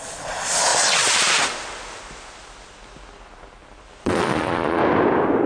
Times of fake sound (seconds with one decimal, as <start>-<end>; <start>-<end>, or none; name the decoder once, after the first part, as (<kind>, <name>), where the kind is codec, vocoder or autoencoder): 0.0-0.7 (vocoder, Vocos); 4.0-4.8